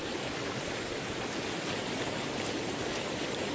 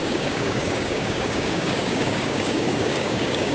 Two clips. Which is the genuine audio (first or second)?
first